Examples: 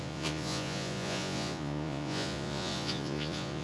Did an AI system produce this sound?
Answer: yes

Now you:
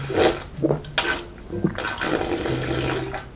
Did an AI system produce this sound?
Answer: no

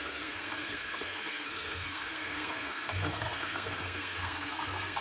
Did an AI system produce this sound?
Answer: yes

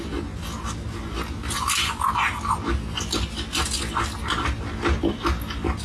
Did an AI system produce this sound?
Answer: no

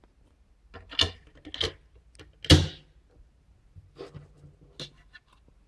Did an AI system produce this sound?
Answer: no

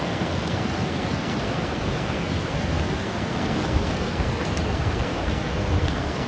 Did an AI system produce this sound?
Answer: yes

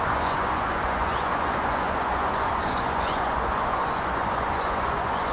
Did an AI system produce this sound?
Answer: yes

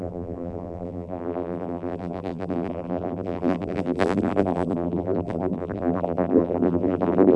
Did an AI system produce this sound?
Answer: yes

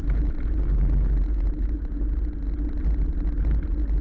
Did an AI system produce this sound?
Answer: no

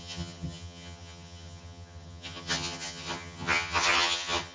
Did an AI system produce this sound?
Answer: yes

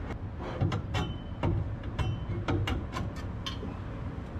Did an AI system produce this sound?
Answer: no